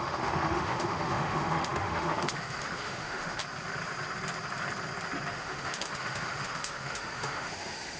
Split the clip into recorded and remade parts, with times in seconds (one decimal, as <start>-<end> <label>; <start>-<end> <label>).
0.0-3.4 remade; 3.4-5.3 recorded; 5.3-8.0 remade